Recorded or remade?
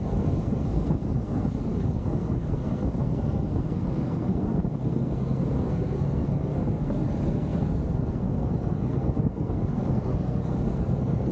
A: remade